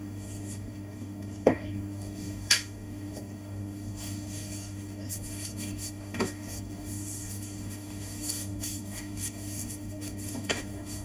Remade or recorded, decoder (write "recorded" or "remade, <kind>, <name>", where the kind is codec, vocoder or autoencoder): remade, codec, DAC